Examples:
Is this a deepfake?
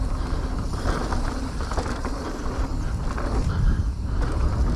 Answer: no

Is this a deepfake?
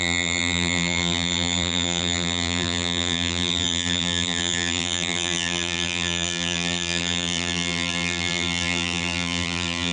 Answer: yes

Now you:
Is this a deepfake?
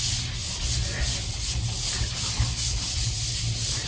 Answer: no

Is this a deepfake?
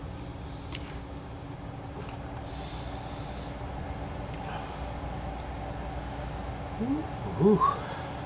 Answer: no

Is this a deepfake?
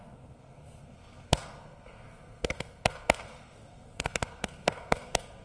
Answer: yes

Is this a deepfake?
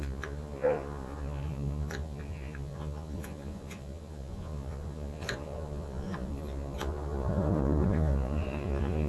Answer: yes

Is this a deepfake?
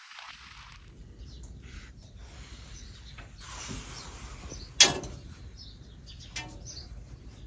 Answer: no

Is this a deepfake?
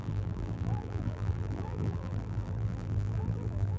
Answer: yes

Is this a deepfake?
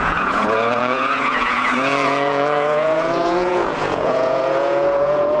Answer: yes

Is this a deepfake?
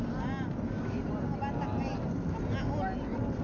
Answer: no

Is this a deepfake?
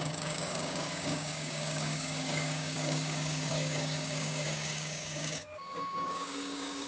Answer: yes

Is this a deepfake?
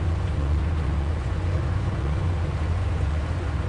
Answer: yes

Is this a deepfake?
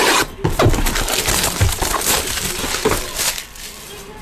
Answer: yes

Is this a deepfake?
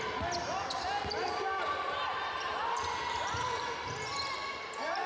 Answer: no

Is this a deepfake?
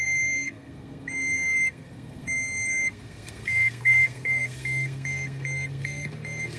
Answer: yes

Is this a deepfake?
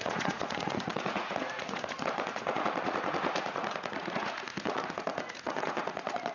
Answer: yes